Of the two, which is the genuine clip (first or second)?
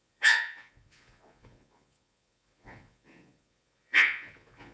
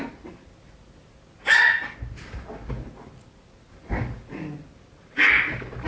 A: second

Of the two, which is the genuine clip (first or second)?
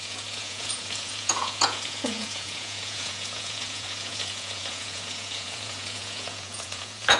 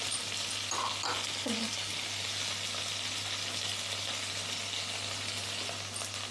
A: second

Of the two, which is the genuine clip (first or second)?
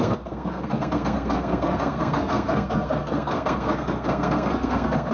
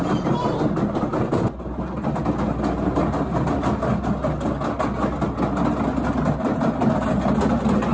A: second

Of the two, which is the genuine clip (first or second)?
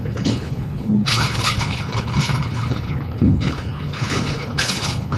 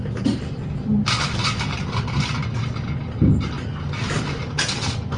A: second